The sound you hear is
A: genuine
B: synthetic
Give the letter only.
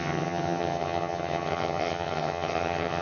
B